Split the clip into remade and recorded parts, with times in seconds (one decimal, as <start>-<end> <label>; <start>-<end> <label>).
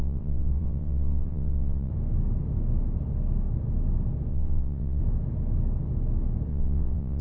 0.0-1.9 remade; 1.9-4.3 recorded; 4.3-5.0 remade; 5.0-6.5 recorded; 6.5-7.2 remade